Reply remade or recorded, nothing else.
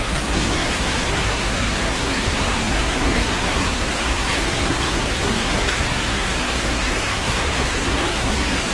remade